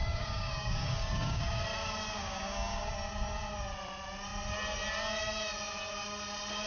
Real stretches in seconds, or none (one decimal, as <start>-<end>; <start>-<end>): 1.5-2.0; 2.9-6.7